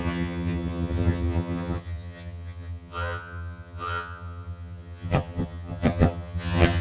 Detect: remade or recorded remade